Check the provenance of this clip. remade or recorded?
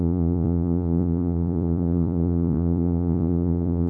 remade